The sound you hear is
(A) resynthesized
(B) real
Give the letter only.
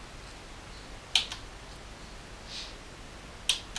B